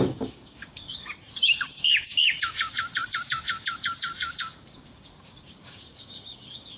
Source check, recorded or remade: remade